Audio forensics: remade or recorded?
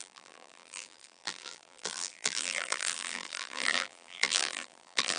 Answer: remade